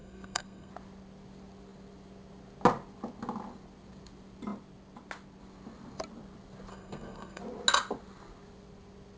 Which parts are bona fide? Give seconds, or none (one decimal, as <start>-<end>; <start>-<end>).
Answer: 0.7-6.7; 7.4-9.2